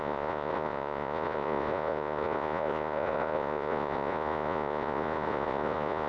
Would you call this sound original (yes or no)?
no